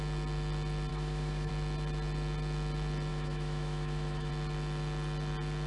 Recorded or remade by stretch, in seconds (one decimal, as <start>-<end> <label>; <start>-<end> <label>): 0.0-0.9 recorded; 0.9-1.5 remade; 1.5-3.1 recorded; 3.1-4.3 remade; 4.3-5.7 recorded